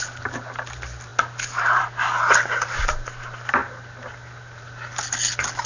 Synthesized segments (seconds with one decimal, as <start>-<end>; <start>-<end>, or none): none